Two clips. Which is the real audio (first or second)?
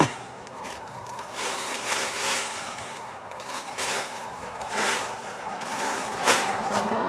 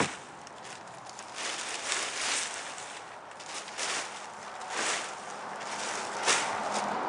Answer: second